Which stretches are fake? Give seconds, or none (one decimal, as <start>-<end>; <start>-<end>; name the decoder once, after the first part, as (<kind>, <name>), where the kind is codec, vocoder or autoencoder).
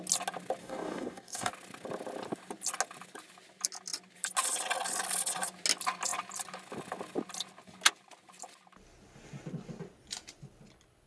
0.6-1.5 (codec, DAC)